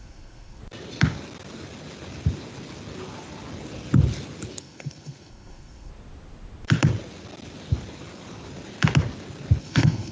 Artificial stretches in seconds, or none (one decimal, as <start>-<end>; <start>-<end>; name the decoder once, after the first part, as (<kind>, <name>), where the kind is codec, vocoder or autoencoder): 0.0-0.6 (codec, SNAC); 4.6-5.9; 9.6-10.1